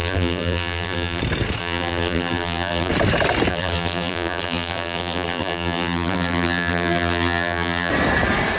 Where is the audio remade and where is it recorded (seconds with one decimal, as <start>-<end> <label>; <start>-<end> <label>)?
0.0-1.2 remade; 1.2-1.6 recorded; 1.6-2.9 remade; 2.9-3.5 recorded; 3.5-7.9 remade; 7.9-8.6 recorded